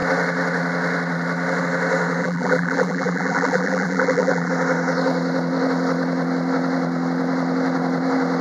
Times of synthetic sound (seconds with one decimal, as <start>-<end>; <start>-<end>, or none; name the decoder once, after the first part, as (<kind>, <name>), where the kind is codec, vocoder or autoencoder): 2.2-4.5 (vocoder, BigVGAN v2)